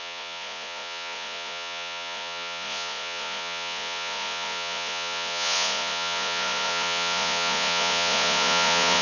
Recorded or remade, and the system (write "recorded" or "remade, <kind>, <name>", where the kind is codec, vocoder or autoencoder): remade, vocoder, Vocos